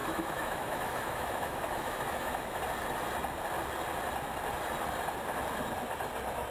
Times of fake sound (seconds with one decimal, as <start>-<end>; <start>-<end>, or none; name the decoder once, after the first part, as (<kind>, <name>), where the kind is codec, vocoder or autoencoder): 0.0-2.6 (autoencoder, DAC-VAE)